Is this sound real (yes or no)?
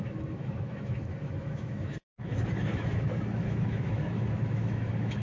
no